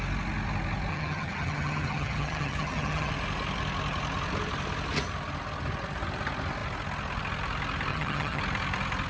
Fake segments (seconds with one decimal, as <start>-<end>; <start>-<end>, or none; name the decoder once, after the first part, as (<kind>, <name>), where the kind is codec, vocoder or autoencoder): 0.9-3.1 (vocoder, HiFi-GAN); 7.9-8.4